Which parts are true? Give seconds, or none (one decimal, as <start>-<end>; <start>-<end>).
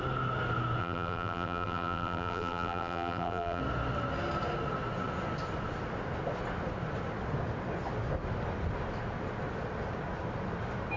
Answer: 0.0-0.8; 3.6-11.0